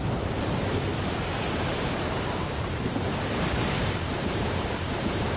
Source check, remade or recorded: remade